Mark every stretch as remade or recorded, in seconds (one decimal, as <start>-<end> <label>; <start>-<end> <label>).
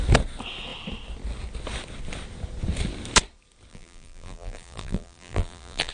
0.0-3.7 recorded; 3.7-5.9 remade